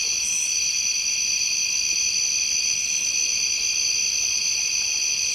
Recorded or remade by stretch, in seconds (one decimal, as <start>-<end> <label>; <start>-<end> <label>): 0.0-5.3 recorded